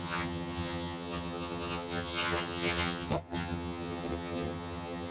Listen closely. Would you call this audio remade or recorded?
remade